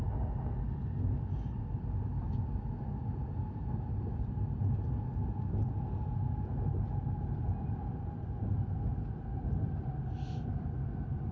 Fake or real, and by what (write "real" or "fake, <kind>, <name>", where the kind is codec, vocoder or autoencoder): real